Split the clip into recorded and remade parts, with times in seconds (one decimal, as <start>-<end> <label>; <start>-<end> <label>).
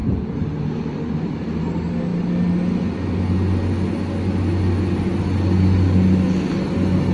0.0-1.6 remade; 1.6-7.1 recorded